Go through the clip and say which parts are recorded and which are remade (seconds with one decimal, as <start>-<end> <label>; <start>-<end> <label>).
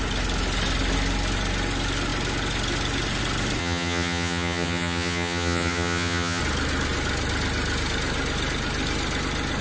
0.0-3.6 recorded; 3.6-6.4 remade; 6.4-9.6 recorded